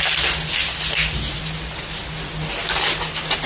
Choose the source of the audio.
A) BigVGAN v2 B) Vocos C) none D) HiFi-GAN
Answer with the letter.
C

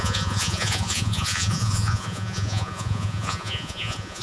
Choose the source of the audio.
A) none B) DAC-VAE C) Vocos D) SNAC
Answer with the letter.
C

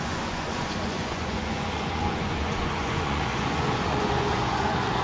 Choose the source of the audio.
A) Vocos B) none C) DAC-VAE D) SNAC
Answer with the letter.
A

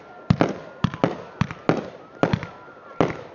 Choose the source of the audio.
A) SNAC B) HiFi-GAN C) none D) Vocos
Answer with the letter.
C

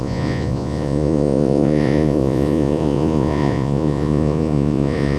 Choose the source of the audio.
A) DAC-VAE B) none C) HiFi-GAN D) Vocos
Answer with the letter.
D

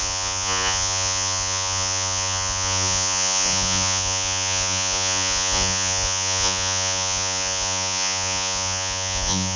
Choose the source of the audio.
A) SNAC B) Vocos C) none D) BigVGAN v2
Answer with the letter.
B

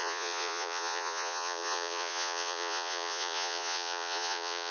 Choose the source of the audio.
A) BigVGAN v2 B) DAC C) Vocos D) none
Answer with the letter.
C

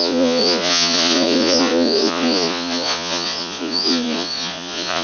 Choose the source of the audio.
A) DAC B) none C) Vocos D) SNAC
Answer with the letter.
C